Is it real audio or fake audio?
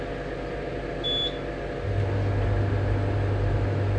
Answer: real